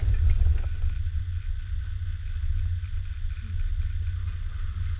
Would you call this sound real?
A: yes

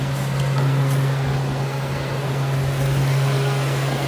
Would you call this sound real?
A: no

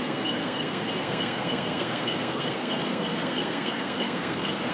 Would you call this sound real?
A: no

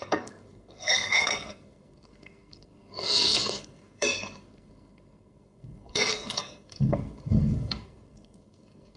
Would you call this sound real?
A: no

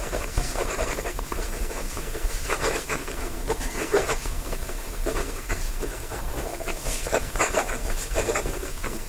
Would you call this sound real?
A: no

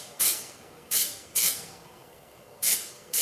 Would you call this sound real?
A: no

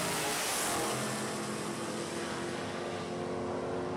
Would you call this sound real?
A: yes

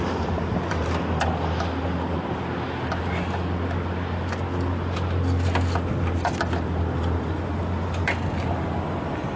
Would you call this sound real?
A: yes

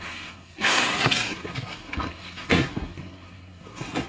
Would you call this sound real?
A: no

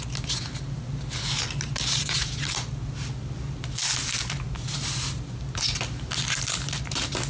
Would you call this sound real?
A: yes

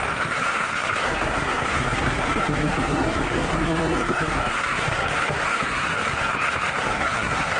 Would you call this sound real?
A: no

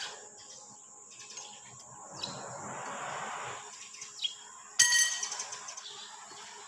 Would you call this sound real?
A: yes